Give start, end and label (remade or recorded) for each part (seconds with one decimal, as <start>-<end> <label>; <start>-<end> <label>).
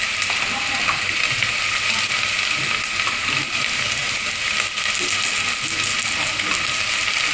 0.0-7.3 recorded